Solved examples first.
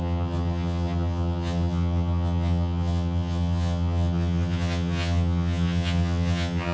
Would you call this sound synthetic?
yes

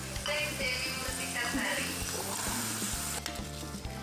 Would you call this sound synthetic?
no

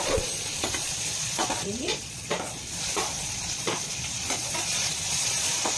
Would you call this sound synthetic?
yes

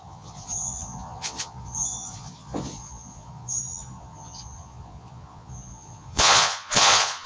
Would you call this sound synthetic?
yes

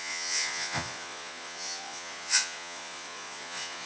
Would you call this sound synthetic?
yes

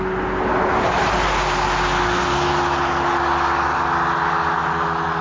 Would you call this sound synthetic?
no